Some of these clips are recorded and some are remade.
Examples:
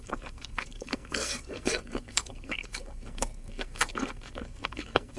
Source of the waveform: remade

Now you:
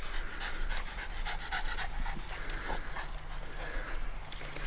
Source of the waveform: recorded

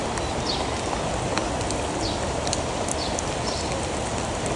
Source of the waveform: recorded